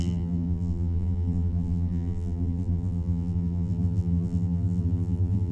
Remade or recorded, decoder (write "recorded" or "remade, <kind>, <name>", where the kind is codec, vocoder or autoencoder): remade, vocoder, BigVGAN v2